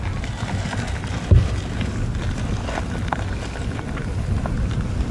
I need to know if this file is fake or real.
real